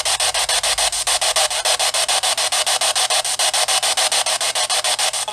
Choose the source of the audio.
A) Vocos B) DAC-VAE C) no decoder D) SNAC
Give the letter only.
C